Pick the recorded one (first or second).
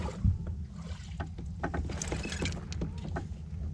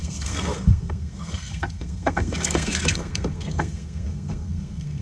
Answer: first